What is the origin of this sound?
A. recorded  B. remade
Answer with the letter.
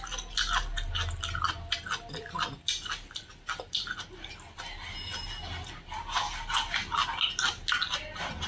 A